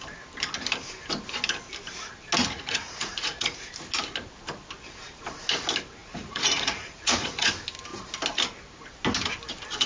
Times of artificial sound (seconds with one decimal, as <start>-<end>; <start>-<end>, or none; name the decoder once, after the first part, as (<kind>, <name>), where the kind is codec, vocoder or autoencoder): 2.4-3.7 (vocoder, Vocos); 6.0-7.5